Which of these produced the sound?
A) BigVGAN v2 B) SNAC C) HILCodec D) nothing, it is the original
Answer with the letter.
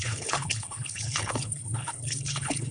C